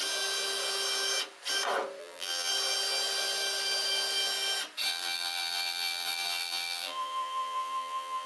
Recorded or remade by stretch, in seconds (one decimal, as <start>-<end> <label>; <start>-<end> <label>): 0.0-2.0 recorded; 2.0-2.5 remade; 2.5-4.9 recorded; 4.9-8.3 remade

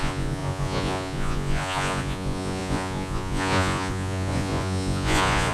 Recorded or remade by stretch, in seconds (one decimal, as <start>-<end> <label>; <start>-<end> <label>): 0.0-5.5 remade

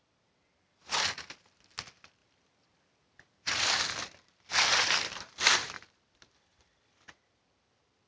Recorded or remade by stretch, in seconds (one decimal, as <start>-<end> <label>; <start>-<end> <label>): 0.0-4.5 recorded; 4.5-8.1 remade

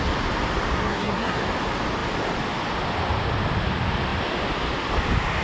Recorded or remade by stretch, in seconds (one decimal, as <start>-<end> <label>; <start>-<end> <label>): 0.0-0.7 recorded; 0.7-1.4 remade; 1.4-5.4 recorded

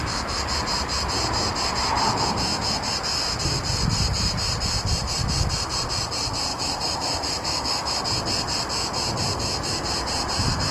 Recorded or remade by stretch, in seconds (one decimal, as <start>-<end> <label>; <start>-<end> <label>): 0.0-6.5 recorded; 6.5-8.0 remade; 8.0-10.7 recorded

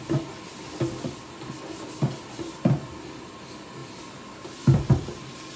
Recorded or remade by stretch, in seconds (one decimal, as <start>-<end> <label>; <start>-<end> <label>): 0.0-5.6 recorded

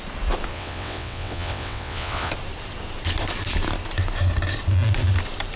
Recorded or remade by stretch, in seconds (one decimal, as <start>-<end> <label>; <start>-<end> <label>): 0.0-0.5 recorded; 0.5-2.3 remade; 2.3-5.6 recorded